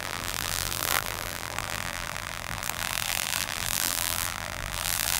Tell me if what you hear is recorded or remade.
remade